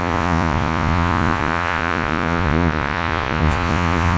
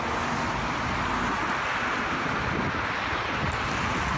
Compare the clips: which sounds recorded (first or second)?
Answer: second